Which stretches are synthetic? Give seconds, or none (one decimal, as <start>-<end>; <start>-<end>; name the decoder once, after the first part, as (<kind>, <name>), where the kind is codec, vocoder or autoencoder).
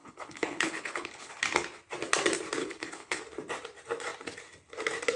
0.0-1.4 (codec, HILCodec); 2.6-3.2